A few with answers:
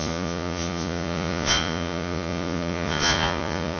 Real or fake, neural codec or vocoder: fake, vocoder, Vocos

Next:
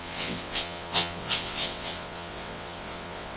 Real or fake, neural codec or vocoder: fake, vocoder, WaveNeXt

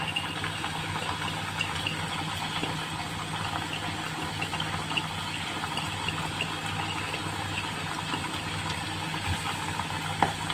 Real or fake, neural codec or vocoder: real